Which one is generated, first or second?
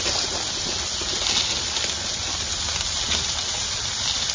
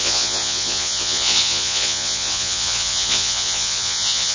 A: second